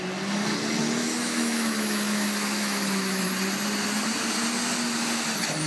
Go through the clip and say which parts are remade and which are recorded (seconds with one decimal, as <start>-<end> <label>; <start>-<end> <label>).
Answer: 0.0-1.0 recorded; 1.0-3.3 remade; 3.3-5.7 recorded